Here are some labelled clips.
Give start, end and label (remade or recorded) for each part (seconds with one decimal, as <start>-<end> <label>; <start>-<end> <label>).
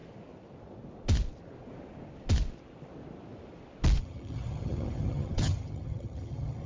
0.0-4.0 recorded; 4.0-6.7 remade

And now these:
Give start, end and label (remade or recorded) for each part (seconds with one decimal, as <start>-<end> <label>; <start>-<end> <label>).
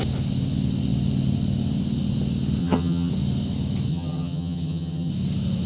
0.0-2.6 recorded; 2.6-3.1 remade; 3.1-3.9 recorded; 3.9-5.1 remade; 5.1-5.7 recorded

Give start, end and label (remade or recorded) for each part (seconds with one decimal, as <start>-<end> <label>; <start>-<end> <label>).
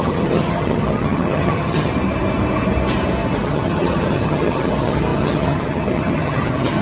0.0-1.9 remade; 1.9-3.4 recorded; 3.4-6.8 remade